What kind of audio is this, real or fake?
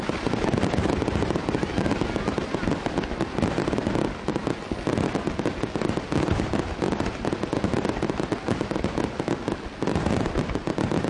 real